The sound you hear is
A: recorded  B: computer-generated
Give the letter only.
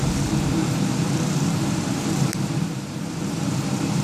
B